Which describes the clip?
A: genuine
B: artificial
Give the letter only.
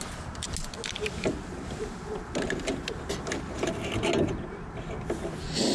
A